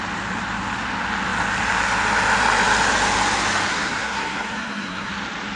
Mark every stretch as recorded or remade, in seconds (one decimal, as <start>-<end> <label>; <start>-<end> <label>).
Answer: 0.0-3.7 recorded; 3.7-5.1 remade; 5.1-5.6 recorded